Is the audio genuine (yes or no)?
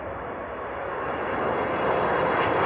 yes